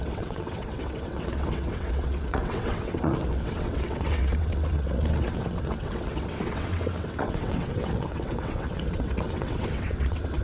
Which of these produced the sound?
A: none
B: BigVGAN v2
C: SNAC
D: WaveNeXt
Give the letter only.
D